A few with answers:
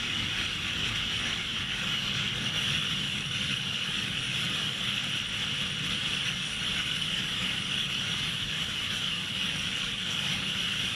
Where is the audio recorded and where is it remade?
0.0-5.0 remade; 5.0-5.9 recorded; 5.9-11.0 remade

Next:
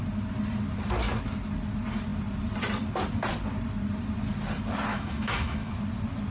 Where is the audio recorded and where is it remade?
0.0-4.9 recorded; 4.9-5.7 remade; 5.7-6.3 recorded

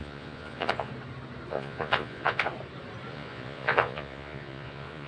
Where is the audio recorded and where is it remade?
0.0-0.9 remade; 0.9-1.5 recorded; 1.5-2.5 remade; 2.5-3.1 recorded; 3.1-5.1 remade